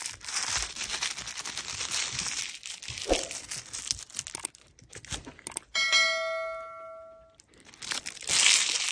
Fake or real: real